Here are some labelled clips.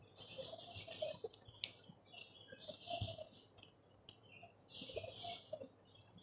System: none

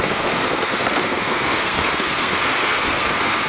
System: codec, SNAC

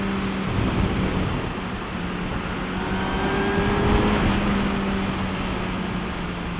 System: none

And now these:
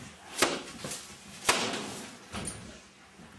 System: none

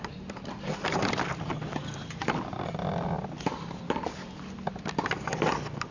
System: none